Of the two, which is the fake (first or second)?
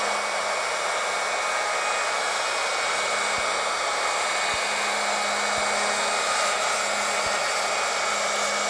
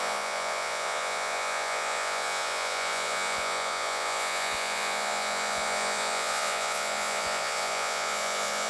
second